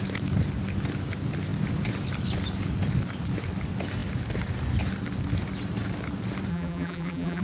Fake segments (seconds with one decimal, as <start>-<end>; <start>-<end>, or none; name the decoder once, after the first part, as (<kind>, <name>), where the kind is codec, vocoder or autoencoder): 6.5-7.4 (vocoder, BigVGAN v2)